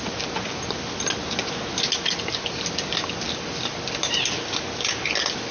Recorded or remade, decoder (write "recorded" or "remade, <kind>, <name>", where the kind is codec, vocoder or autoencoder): recorded